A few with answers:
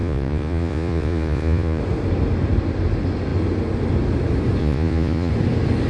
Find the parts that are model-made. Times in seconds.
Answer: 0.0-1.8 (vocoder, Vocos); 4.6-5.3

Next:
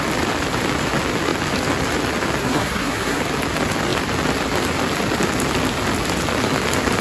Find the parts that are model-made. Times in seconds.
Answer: 2.4-3.2 (codec, SNAC)